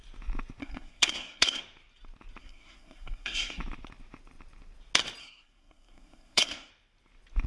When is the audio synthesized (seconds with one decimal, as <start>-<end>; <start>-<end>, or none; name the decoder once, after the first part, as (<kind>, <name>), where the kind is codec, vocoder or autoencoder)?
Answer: 0.6-1.6 (codec, SNAC); 2.4-3.6; 5.2-6.7